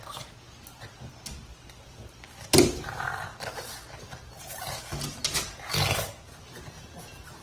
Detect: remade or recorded recorded